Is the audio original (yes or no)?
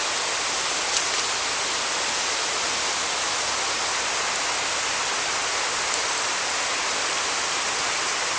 yes